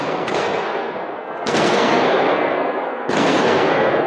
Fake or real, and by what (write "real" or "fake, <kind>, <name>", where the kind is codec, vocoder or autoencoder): fake, codec, SNAC